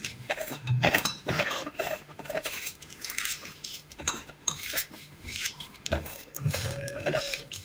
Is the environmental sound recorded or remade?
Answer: remade